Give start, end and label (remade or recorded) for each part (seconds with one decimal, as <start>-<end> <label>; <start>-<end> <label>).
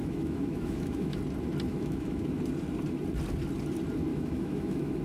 0.0-1.2 remade; 1.2-1.7 recorded; 1.7-2.2 remade; 2.2-4.1 recorded; 4.1-5.0 remade